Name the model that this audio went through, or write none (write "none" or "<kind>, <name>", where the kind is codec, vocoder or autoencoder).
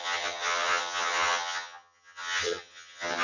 vocoder, HiFi-GAN